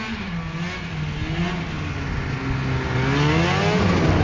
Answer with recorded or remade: recorded